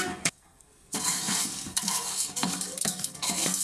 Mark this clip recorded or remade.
remade